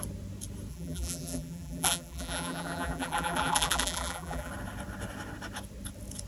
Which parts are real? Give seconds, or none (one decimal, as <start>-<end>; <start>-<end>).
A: 0.0-0.7; 4.5-6.3